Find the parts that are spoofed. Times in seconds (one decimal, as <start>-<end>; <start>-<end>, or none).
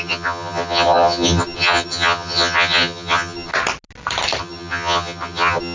0.0-3.5; 4.4-5.7